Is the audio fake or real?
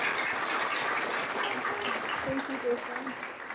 real